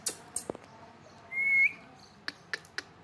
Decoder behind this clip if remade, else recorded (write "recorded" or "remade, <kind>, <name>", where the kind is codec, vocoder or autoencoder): recorded